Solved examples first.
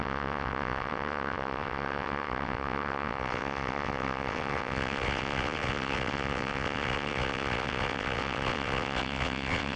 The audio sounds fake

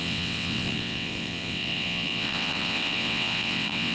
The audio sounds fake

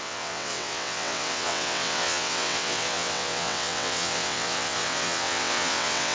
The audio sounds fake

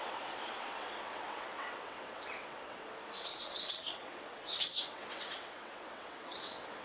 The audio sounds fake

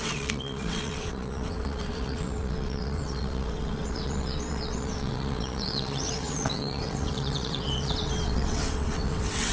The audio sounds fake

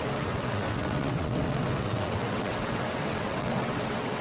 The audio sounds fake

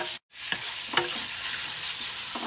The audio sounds real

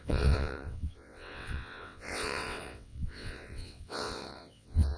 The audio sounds fake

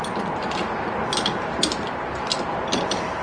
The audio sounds real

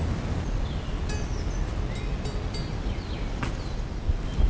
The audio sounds real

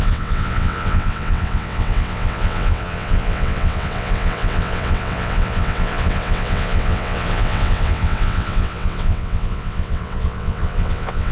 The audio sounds fake